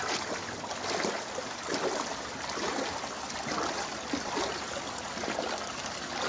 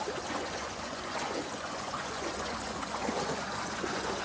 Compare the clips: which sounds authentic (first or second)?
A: first